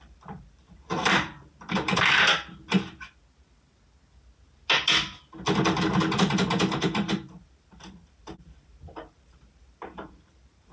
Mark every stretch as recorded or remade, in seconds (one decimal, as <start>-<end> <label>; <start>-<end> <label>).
0.0-1.9 remade; 1.9-6.8 recorded; 6.8-10.7 remade